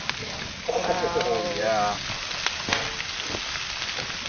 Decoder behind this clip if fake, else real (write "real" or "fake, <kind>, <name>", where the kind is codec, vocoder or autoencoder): real